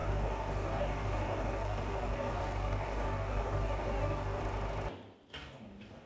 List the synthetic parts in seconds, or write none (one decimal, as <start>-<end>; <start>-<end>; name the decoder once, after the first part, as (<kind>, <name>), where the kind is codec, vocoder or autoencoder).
0.0-4.4 (codec, DAC); 5.3-6.1